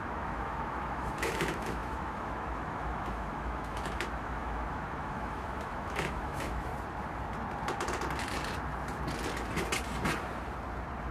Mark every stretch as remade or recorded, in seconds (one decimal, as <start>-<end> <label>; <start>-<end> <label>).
0.0-6.7 remade; 6.7-11.1 recorded